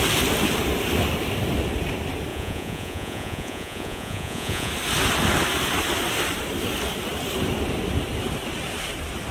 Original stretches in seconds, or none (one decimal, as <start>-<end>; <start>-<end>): 0.0-2.3; 4.7-9.3